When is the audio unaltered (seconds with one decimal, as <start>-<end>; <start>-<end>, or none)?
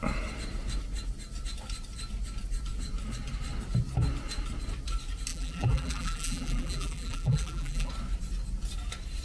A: 0.0-5.3; 7.9-9.2